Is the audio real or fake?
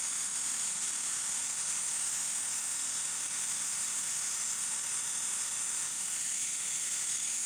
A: fake